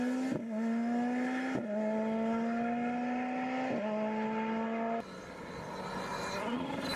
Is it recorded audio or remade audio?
recorded